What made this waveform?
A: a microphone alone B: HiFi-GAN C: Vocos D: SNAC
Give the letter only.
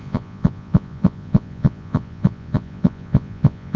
C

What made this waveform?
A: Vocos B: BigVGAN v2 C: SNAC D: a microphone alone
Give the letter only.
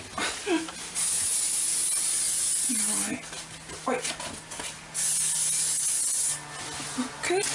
D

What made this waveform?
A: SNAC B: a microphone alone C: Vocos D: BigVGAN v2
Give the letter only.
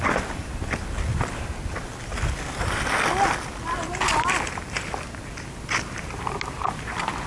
B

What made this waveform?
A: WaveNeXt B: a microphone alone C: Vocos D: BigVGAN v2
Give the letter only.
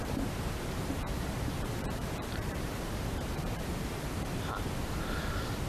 D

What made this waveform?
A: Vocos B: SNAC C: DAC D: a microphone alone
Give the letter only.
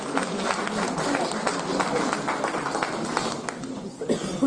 D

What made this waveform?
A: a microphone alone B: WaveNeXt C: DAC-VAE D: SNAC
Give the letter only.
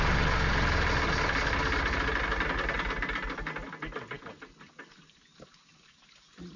A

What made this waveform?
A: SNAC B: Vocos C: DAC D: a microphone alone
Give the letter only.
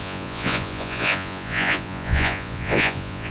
B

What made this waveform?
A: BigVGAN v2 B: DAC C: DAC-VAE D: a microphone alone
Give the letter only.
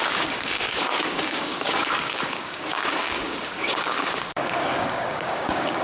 B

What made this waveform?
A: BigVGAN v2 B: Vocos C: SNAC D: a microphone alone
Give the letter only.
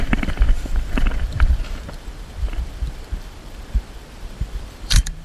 A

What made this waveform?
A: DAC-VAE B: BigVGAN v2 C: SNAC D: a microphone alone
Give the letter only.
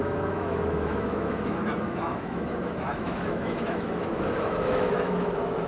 A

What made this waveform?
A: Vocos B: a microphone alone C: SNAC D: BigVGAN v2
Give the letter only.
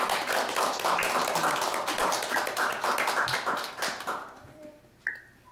D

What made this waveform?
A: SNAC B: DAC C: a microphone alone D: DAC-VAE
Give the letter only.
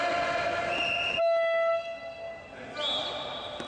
C